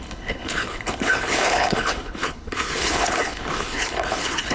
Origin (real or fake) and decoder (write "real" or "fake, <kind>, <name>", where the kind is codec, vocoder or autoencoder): fake, codec, HILCodec